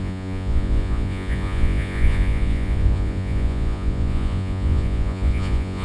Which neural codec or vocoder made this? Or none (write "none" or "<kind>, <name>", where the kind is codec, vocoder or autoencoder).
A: vocoder, Vocos